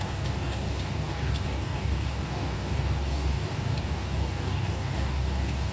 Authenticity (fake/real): fake